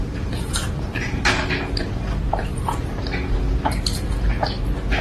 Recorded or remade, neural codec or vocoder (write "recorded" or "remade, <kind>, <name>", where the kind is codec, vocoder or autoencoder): remade, vocoder, BigVGAN v2